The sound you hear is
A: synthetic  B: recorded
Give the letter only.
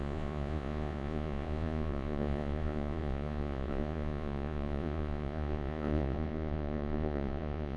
A